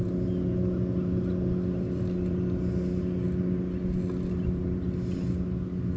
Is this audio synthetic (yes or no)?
no